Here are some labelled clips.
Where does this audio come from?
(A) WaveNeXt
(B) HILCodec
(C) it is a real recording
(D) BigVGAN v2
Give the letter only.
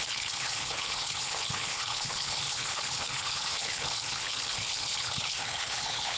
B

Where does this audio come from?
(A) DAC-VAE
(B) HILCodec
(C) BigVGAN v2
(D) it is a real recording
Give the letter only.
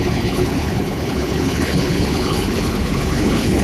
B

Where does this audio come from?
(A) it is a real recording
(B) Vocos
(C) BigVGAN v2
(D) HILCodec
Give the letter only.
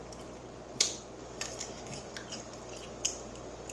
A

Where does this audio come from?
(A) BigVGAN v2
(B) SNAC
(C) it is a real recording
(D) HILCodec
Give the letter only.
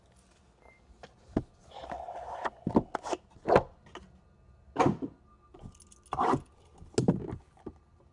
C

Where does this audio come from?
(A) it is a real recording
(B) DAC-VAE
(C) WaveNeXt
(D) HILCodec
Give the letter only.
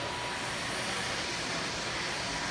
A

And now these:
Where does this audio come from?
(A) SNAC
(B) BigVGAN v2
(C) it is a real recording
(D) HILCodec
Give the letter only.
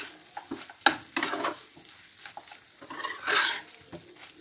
C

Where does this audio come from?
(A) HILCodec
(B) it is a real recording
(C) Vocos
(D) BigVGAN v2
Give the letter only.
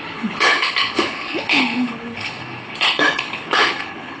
A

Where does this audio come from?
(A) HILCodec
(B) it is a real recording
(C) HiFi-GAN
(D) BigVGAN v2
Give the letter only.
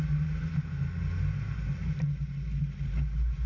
B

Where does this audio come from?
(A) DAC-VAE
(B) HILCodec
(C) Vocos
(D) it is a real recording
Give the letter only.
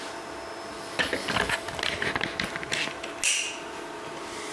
D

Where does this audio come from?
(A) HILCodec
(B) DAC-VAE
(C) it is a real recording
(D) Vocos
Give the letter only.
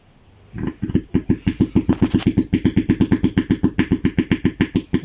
C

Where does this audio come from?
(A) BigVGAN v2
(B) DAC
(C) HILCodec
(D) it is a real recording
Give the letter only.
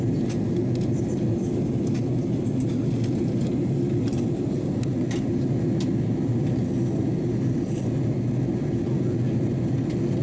D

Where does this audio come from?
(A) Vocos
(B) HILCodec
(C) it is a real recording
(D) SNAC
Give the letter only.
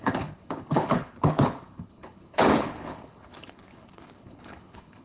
B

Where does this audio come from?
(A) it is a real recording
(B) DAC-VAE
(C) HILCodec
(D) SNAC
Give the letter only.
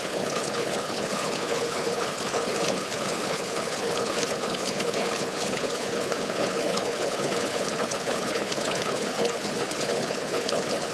C